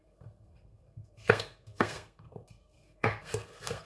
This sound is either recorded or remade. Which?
remade